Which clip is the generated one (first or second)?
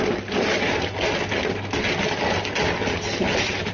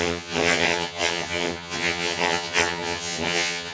second